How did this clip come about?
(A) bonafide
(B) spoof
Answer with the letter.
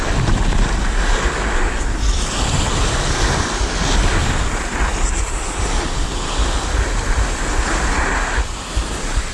A